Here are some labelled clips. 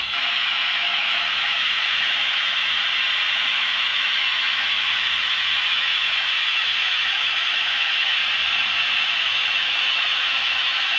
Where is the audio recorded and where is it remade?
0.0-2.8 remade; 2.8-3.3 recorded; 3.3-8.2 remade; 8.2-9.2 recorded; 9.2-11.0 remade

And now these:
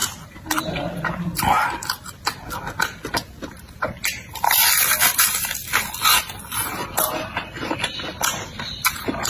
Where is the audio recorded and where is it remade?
0.0-9.3 recorded

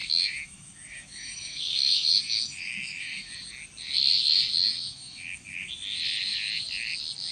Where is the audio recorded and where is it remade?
0.0-3.3 remade; 3.3-4.7 recorded; 4.7-5.7 remade; 5.7-7.3 recorded

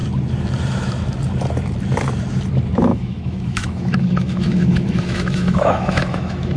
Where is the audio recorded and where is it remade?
0.0-2.9 recorded; 2.9-6.6 remade

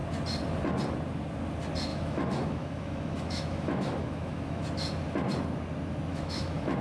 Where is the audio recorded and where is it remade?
0.0-1.9 recorded; 1.9-4.6 remade; 4.6-6.1 recorded; 6.1-6.8 remade

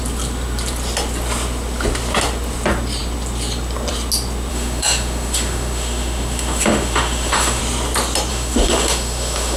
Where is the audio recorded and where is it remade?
0.0-4.5 recorded; 4.5-7.6 remade; 7.6-8.3 recorded; 8.3-9.6 remade